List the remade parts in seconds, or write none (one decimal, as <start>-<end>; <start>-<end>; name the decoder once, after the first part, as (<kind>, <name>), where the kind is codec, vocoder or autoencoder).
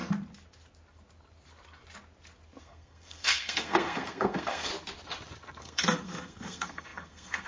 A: 2.6-4.7 (codec, SNAC); 5.6-7.5